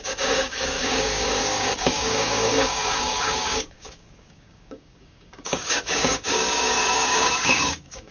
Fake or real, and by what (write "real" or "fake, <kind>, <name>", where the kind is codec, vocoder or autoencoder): fake, codec, DAC